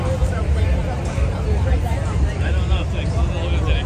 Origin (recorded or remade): recorded